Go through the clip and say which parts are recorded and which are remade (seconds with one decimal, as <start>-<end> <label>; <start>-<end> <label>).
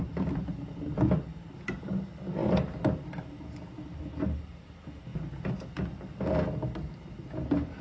0.0-7.8 recorded